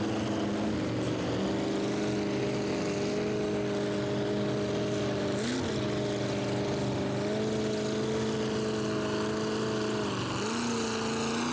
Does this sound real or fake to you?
real